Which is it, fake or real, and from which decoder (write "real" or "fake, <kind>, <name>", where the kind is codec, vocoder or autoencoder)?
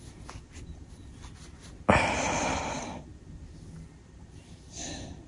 real